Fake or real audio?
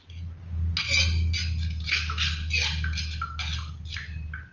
real